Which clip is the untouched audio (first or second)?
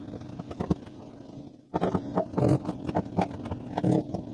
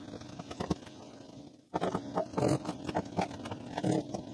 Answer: first